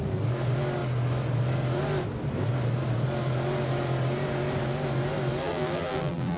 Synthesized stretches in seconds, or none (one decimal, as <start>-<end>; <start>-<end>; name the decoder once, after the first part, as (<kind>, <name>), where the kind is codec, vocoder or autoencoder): 5.4-6.4 (vocoder, BigVGAN v2)